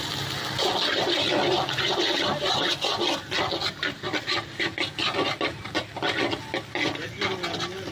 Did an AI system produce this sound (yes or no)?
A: no